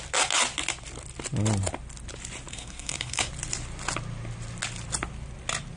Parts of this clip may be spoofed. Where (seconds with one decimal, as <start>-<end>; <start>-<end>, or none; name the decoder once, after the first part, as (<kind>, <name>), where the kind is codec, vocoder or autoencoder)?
2.5-3.3 (codec, SNAC)